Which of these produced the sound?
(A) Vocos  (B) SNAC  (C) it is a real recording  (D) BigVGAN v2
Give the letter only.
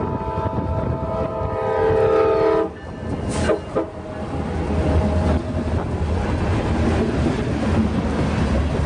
C